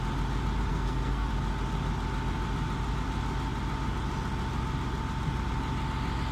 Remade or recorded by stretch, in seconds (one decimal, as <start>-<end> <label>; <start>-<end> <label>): 0.0-0.7 recorded; 0.7-1.3 remade; 1.3-6.3 recorded